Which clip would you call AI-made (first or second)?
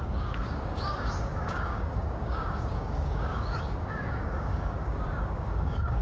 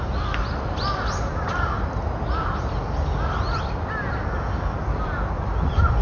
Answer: first